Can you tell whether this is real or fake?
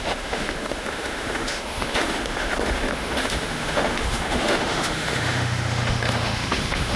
fake